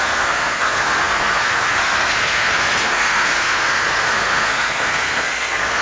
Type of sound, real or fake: fake